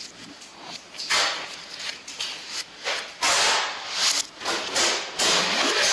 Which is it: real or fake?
real